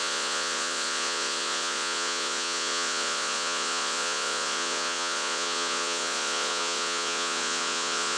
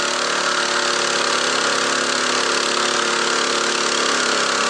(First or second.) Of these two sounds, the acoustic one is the second